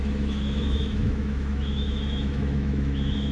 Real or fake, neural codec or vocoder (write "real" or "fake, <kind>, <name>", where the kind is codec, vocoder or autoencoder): fake, autoencoder, DAC-VAE